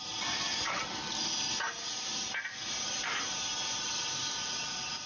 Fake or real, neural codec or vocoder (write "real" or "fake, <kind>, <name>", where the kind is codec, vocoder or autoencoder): fake, vocoder, BigVGAN v2